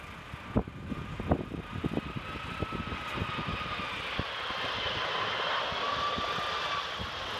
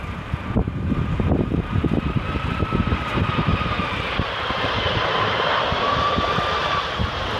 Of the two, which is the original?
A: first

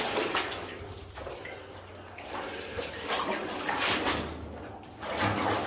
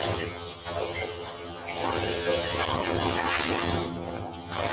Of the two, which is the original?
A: first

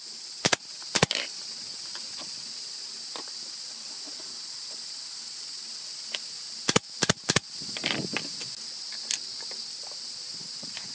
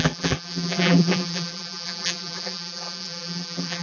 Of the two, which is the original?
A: first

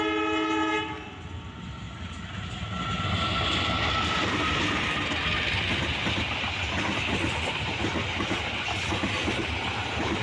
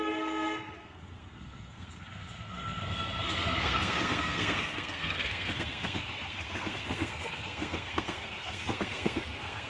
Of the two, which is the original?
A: first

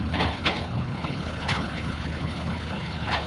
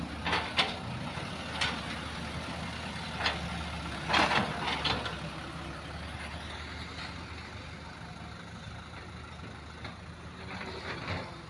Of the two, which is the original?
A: second